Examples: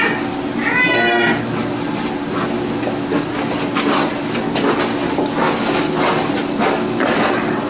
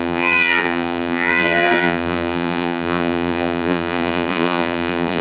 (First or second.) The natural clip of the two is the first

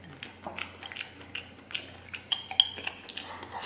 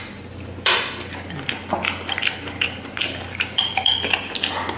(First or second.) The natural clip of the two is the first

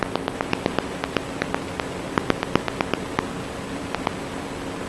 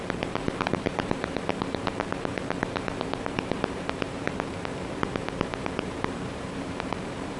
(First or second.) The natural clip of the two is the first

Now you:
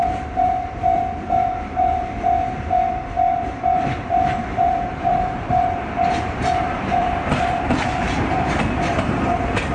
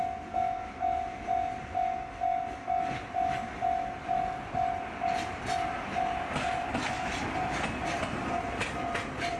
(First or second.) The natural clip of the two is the second